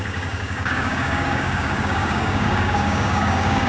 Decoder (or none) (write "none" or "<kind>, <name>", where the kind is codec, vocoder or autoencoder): codec, DAC